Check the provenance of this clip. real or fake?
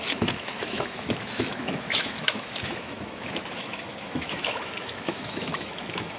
fake